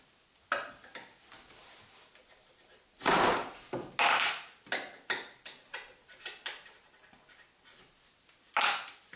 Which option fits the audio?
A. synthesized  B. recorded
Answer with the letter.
B